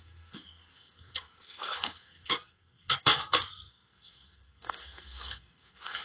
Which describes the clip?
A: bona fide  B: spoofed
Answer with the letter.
B